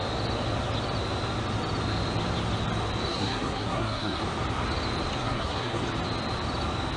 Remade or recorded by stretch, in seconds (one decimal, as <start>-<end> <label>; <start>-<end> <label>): 0.0-3.1 recorded; 3.1-4.2 remade; 4.2-5.2 recorded; 5.2-5.8 remade; 5.8-7.0 recorded